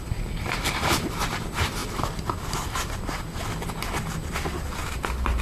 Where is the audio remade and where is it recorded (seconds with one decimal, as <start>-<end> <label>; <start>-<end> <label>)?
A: 0.0-5.4 recorded